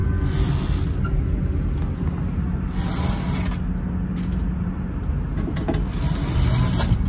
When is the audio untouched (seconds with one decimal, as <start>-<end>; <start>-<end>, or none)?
0.0-7.1